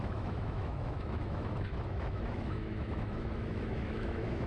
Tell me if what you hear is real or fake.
fake